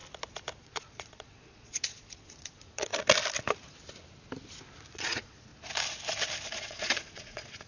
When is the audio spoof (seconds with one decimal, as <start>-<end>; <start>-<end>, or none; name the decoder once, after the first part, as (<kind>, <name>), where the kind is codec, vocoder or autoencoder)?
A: 0.6-2.9 (vocoder, Vocos); 4.9-5.5; 6.6-7.7